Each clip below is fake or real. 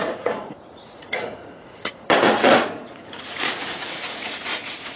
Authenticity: fake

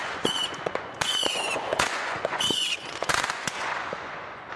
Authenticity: fake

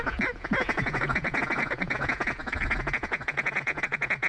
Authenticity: fake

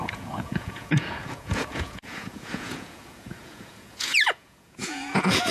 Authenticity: fake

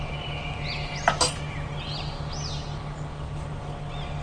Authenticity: real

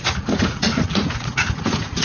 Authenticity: fake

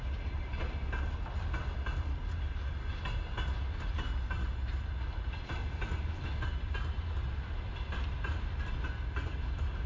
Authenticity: real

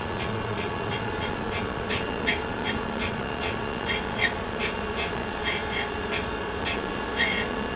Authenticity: fake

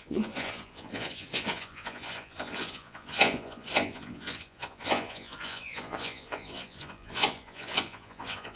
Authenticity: fake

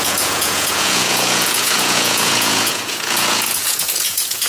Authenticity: fake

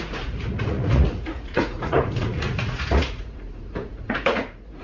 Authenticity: fake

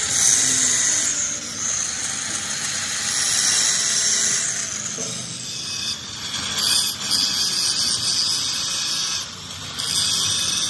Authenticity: real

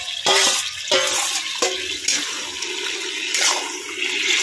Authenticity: real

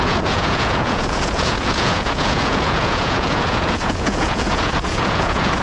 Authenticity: fake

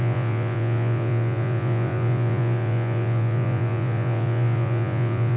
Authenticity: fake